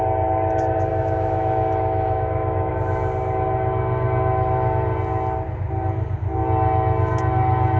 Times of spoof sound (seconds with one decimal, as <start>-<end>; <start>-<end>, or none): 0.9-2.7